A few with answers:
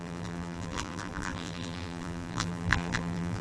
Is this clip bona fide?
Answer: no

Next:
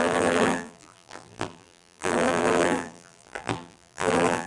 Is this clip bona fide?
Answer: no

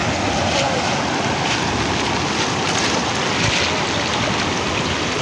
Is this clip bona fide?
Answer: yes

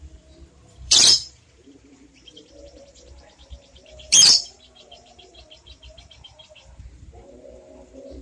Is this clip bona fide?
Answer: no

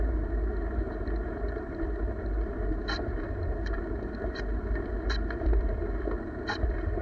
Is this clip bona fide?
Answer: no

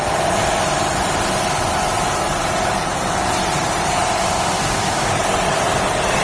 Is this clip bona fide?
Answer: no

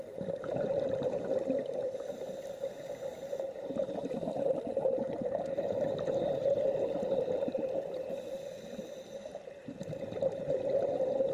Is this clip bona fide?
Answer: no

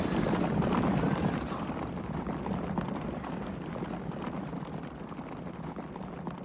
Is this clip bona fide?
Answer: no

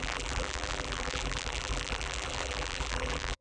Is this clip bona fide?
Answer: no